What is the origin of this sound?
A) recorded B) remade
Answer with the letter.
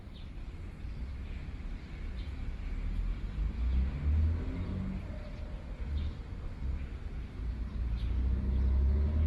A